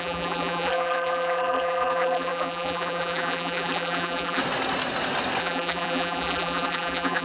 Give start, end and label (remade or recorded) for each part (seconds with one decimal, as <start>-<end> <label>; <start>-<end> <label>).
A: 0.0-4.4 remade; 4.4-5.4 recorded; 5.4-7.2 remade